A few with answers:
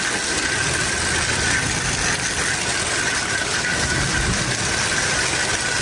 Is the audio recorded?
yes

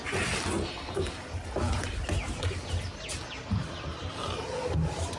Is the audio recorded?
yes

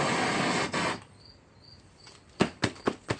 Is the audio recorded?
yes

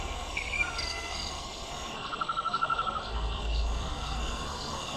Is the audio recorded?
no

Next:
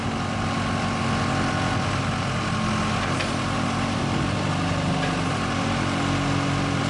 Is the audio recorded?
yes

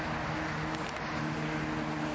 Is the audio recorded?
yes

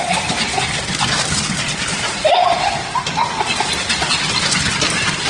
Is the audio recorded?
yes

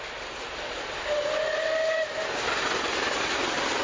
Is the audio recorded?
yes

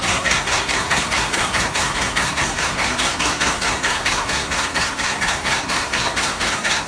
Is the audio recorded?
no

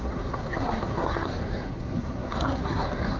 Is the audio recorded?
no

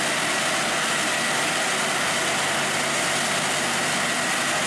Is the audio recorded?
yes